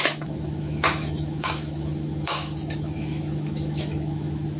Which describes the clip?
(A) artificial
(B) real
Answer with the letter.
A